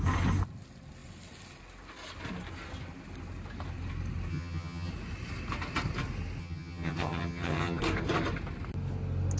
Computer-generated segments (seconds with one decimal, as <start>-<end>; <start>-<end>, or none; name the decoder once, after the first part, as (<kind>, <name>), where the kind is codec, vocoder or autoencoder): 4.3-4.9 (vocoder, HiFi-GAN); 6.4-7.8